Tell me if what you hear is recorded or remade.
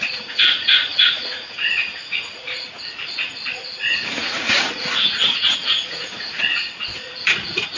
remade